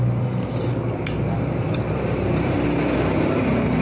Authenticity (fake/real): real